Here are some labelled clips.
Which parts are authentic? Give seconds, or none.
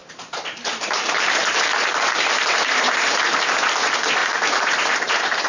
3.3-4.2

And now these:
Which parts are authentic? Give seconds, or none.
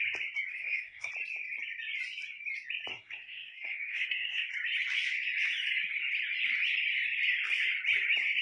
0.0-0.5; 1.1-2.9; 4.5-8.4